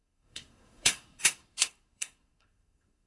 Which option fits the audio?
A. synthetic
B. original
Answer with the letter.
A